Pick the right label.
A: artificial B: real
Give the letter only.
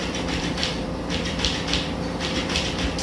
A